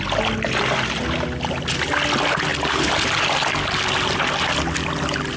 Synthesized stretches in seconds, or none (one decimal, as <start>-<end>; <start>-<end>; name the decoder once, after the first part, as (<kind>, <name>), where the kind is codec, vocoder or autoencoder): none